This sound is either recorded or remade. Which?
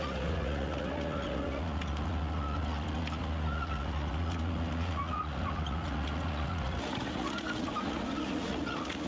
remade